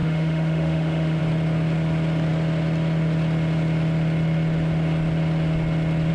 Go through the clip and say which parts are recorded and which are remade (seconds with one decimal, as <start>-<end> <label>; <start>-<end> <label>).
0.0-1.2 remade; 1.2-6.1 recorded